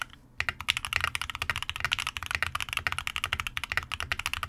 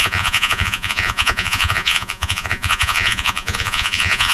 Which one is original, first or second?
first